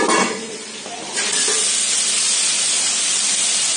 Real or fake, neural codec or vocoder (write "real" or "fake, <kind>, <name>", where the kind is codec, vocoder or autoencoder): real